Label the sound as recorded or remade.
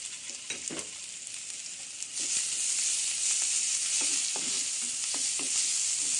recorded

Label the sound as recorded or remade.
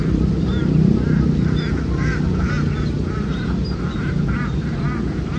recorded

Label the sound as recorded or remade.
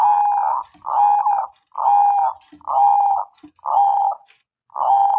recorded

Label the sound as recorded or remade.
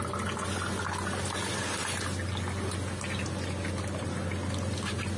recorded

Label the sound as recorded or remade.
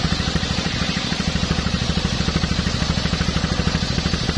recorded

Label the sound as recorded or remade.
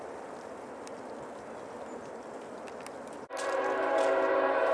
recorded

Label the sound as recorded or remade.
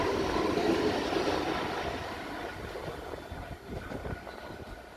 recorded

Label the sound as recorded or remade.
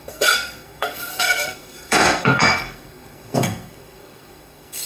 remade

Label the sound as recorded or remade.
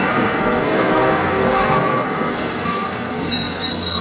remade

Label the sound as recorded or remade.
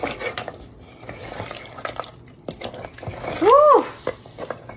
recorded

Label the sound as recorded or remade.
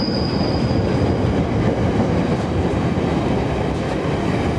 recorded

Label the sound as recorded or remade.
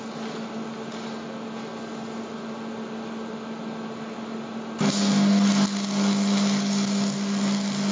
recorded